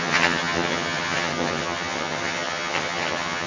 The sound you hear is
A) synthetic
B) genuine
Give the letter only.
A